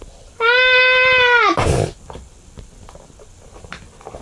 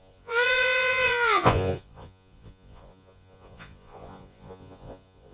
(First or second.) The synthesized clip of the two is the second